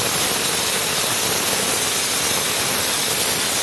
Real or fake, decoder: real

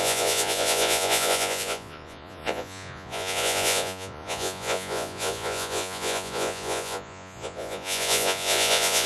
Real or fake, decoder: fake, vocoder, Vocos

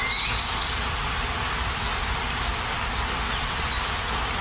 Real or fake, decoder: real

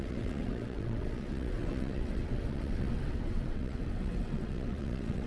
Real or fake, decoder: fake, vocoder, WaveNeXt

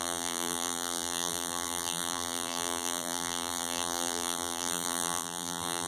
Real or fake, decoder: fake, vocoder, BigVGAN v2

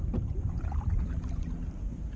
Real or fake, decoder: real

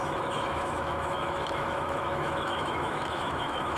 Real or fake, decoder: fake, autoencoder, DAC-VAE